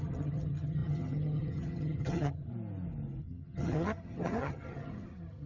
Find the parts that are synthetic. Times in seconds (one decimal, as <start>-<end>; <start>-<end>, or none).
0.0-2.5; 3.2-5.5